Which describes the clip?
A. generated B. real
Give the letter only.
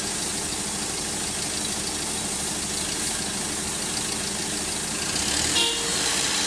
B